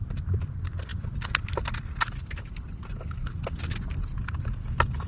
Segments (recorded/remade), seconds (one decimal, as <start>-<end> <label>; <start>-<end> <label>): 0.0-0.9 remade; 0.9-3.3 recorded; 3.3-5.1 remade